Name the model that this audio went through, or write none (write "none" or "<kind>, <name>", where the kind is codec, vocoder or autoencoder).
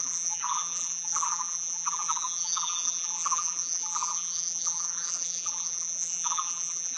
vocoder, BigVGAN v2